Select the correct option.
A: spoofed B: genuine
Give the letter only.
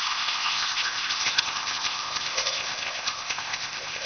A